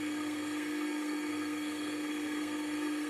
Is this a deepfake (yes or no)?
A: yes